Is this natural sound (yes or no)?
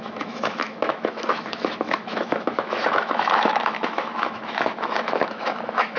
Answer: no